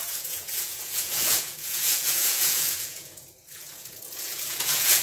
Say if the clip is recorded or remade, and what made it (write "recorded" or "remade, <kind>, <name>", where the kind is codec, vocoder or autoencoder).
remade, vocoder, Vocos